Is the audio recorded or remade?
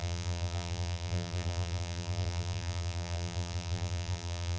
remade